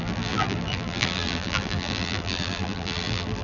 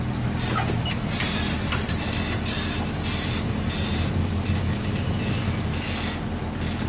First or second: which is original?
second